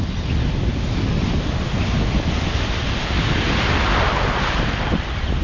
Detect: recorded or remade recorded